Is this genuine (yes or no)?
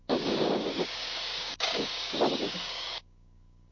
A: no